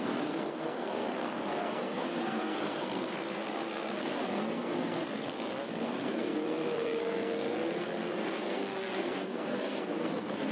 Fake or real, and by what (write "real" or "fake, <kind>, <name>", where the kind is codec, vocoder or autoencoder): fake, codec, SNAC